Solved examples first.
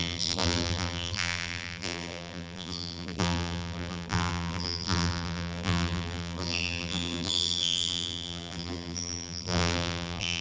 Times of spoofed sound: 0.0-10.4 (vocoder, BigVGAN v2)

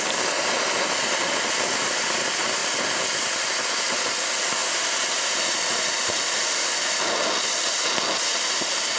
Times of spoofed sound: 2.6-3.2 (vocoder, BigVGAN v2); 4.6-6.9

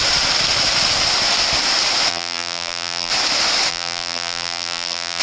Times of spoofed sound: 2.1-3.1 (vocoder, BigVGAN v2); 3.7-5.2

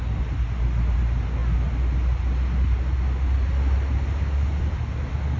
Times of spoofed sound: none

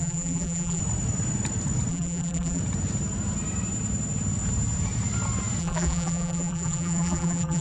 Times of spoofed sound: 0.0-0.8 (vocoder, BigVGAN v2); 1.9-2.6; 5.6-7.6

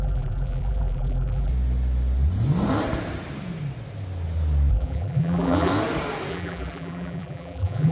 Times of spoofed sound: 0.0-1.5 (vocoder, BigVGAN v2); 4.7-5.7; 6.3-7.9

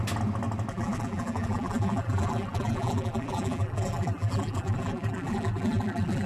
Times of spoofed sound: 0.7-6.3 (vocoder, BigVGAN v2)

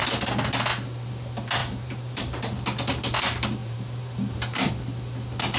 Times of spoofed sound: 1.6-2.2 (vocoder, BigVGAN v2); 3.6-4.7